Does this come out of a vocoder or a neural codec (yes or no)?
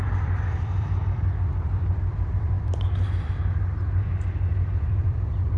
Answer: yes